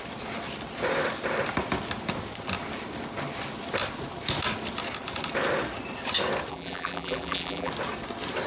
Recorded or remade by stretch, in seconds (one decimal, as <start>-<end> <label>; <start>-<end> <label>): 0.0-6.5 recorded; 6.5-7.7 remade; 7.7-8.5 recorded